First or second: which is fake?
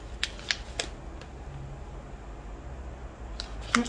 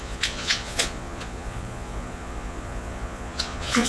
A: second